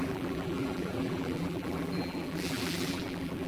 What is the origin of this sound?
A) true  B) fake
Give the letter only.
B